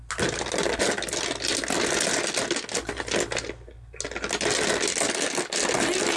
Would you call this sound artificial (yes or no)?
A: no